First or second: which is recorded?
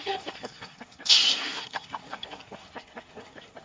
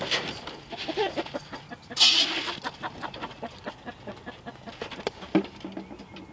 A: second